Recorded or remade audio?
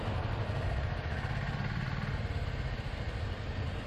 recorded